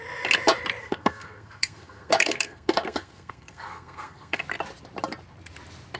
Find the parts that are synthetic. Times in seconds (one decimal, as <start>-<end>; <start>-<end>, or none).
0.8-4.4